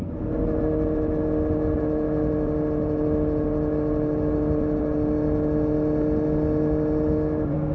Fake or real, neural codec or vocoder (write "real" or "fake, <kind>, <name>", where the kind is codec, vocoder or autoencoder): real